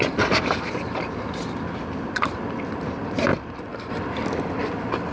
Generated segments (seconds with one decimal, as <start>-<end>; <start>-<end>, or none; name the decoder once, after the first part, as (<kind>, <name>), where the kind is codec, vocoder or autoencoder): 0.0-5.1 (vocoder, BigVGAN v2)